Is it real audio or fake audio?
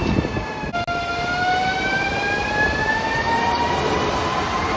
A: real